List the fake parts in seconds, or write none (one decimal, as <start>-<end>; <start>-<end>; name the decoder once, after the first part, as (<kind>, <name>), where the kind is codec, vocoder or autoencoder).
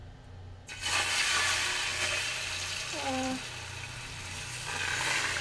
1.9-5.4 (vocoder, BigVGAN v2)